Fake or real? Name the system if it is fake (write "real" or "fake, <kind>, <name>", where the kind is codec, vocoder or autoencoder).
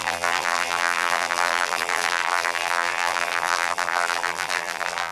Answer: fake, vocoder, BigVGAN v2